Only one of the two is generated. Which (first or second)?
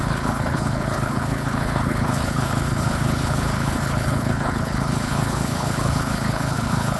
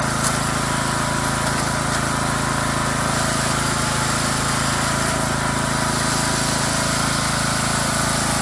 first